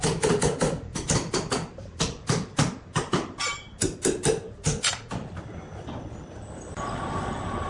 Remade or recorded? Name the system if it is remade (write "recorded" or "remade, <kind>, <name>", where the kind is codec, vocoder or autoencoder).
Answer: recorded